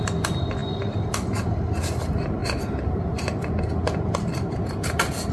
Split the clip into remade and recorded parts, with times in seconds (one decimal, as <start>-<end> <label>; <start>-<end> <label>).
0.0-5.3 recorded